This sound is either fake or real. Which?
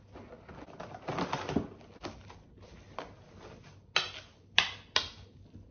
real